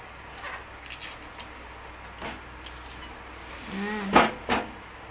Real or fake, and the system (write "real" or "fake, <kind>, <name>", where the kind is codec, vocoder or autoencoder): real